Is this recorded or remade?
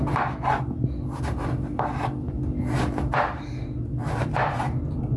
recorded